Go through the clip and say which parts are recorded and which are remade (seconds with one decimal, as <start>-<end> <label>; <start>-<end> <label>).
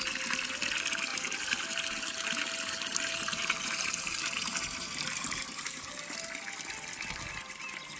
0.0-1.1 recorded; 1.1-5.9 remade; 5.9-8.0 recorded